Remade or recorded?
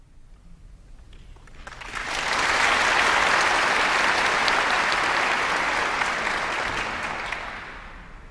recorded